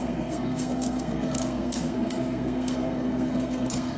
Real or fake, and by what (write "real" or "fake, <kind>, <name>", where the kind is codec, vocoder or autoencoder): fake, codec, SNAC